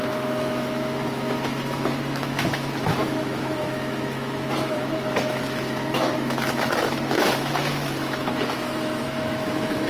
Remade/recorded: remade